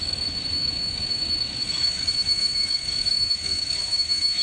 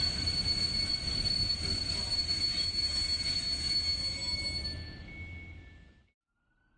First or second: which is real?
second